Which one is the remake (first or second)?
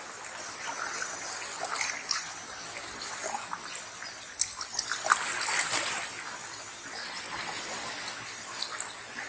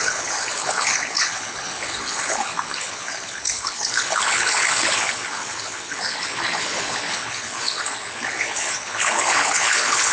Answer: second